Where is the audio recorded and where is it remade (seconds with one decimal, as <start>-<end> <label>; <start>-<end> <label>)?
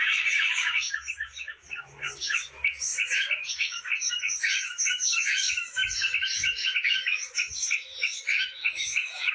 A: 0.0-9.3 remade